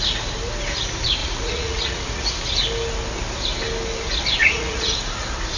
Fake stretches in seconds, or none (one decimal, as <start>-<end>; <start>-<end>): 1.2-2.3; 4.4-4.9